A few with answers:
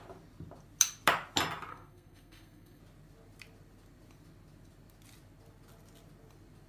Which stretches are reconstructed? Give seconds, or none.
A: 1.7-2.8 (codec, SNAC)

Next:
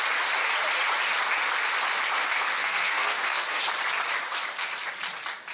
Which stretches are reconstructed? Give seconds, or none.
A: 2.6-3.6 (codec, SNAC)

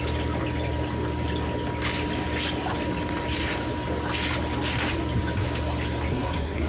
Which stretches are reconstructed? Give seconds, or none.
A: 6.1-6.7 (codec, SNAC)

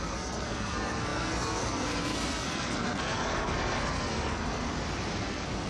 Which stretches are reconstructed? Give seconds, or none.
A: 0.0-4.6 (codec, SNAC); 5.2-5.7